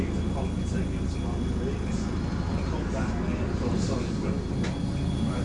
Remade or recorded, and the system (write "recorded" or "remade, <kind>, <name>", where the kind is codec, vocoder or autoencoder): recorded